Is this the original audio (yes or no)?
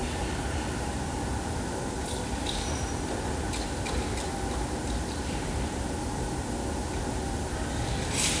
yes